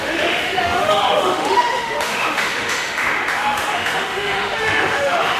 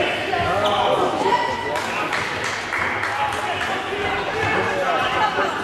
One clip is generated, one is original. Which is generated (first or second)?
first